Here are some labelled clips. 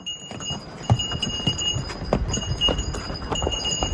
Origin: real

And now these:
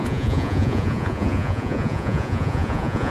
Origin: fake